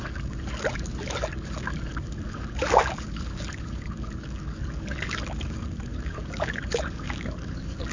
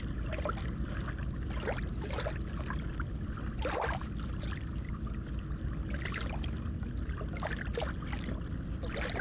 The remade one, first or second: first